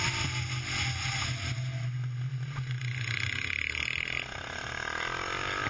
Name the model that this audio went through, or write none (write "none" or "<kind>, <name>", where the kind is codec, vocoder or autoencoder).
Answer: none